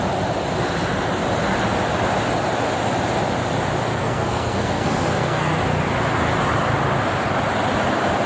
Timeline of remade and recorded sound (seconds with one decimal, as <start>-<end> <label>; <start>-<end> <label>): 0.0-3.9 recorded; 3.9-5.6 remade; 5.6-8.3 recorded